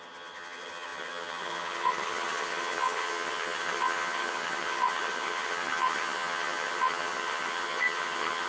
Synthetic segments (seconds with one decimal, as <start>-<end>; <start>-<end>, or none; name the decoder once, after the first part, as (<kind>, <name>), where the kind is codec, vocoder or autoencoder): 0.0-8.5 (vocoder, HiFi-GAN)